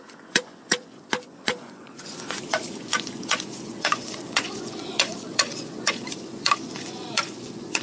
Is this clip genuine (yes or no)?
no